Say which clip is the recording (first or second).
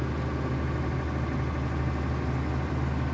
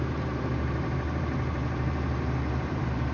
first